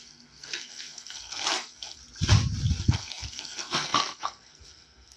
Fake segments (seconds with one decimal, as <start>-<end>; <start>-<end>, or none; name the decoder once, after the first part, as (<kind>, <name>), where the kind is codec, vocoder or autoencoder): 0.0-2.0 (codec, SNAC); 2.8-5.2